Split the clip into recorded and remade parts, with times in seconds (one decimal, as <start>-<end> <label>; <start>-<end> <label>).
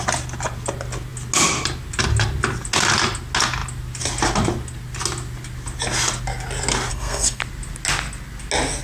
0.0-6.9 recorded; 6.9-7.4 remade; 7.4-8.8 recorded